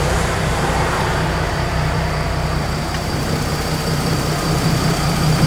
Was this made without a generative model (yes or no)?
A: no